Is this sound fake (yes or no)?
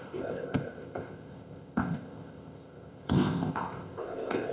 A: yes